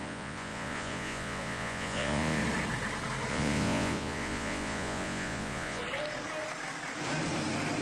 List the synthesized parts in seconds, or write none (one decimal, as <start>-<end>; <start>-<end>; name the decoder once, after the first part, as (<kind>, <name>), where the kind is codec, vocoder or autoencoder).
0.0-2.4 (vocoder, Vocos); 3.3-5.8